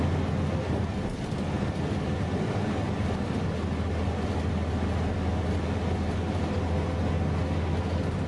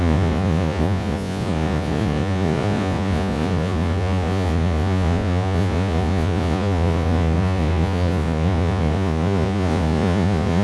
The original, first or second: first